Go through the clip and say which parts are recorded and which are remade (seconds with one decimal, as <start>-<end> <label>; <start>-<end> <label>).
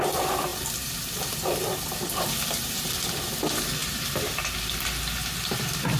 0.0-0.5 recorded; 0.5-3.0 remade; 3.0-6.0 recorded